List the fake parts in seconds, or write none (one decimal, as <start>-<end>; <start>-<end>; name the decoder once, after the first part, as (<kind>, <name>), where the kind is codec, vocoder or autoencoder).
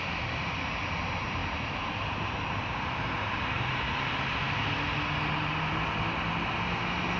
none